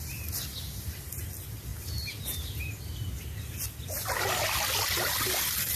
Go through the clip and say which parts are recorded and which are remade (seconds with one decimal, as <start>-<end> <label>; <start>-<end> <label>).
0.0-5.8 recorded